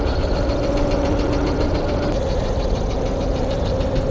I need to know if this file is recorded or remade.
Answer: recorded